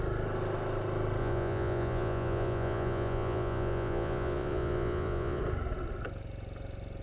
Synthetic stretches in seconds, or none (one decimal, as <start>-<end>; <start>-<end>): 1.2-5.4